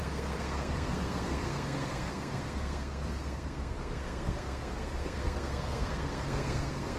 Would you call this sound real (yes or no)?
no